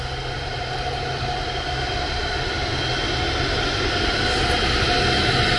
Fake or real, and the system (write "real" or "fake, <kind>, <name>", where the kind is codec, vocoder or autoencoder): real